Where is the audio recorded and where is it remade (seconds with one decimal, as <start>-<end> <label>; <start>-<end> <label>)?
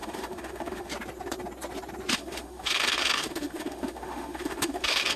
0.0-0.9 remade; 0.9-2.1 recorded; 2.1-5.2 remade